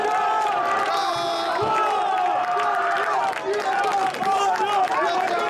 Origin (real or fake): real